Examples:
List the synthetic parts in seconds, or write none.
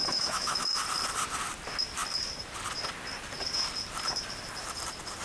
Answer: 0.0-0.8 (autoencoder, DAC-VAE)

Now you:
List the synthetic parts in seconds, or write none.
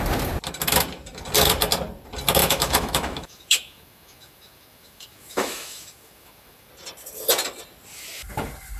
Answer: 2.4-6.7 (autoencoder, DAC-VAE)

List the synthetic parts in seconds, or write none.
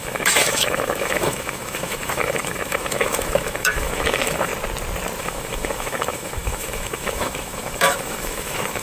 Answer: 0.0-4.5 (autoencoder, DAC-VAE); 5.2-8.8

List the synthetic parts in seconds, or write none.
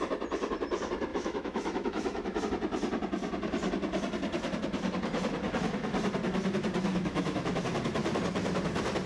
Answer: 1.1-2.4 (autoencoder, DAC-VAE); 6.9-7.6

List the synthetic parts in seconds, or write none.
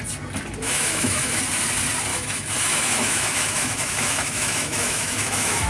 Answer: 0.6-1.4 (autoencoder, DAC-VAE); 2.1-5.7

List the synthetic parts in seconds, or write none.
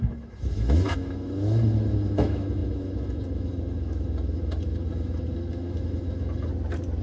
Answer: 0.0-6.5 (autoencoder, DAC-VAE)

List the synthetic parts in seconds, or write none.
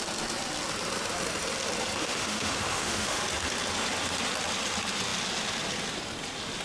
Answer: 2.0-3.2 (autoencoder, DAC-VAE)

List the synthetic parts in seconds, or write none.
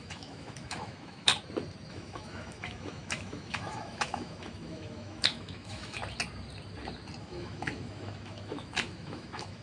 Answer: 0.0-1.3 (autoencoder, DAC-VAE); 1.9-6.0; 7.2-9.6